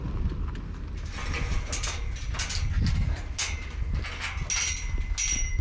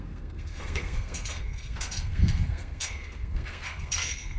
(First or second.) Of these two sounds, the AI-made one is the second